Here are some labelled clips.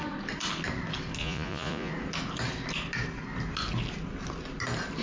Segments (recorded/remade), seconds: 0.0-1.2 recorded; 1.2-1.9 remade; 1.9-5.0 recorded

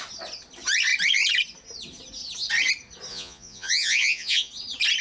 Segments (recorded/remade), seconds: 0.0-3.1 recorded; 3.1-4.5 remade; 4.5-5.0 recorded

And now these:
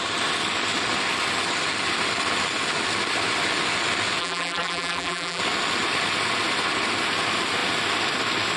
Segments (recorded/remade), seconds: 0.0-4.2 recorded; 4.2-5.4 remade; 5.4-8.6 recorded

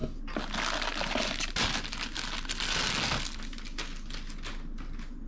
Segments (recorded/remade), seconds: 0.0-5.3 recorded

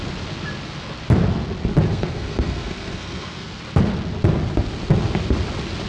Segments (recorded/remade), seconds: 0.0-1.9 recorded; 1.9-3.6 remade; 3.6-5.9 recorded

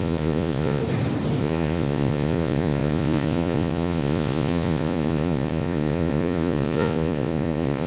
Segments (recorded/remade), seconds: 0.0-0.8 remade; 0.8-1.4 recorded; 1.4-7.9 remade